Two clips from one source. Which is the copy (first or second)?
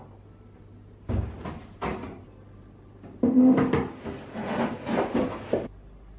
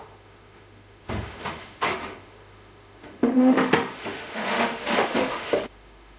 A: second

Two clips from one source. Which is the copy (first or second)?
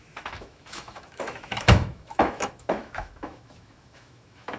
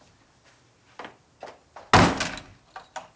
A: first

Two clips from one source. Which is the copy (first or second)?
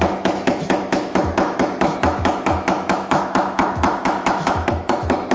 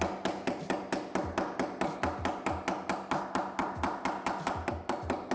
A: first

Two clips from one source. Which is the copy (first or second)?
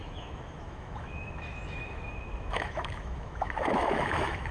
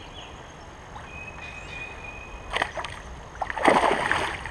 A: first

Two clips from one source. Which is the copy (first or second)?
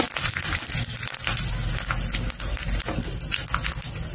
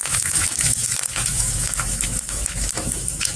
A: second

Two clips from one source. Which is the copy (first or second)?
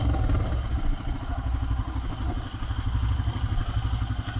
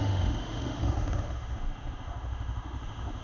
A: second